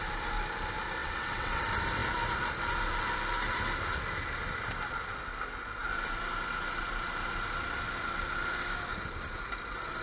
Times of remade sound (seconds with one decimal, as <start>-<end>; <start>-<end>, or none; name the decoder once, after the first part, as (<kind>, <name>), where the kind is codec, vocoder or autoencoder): 1.0-1.6 (vocoder, WaveNeXt)